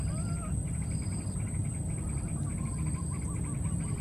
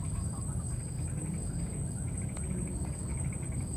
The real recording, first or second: first